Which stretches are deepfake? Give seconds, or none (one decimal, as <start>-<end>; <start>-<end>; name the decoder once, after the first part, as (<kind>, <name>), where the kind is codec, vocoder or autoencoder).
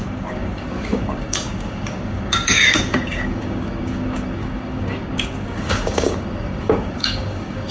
0.0-7.7 (codec, DAC)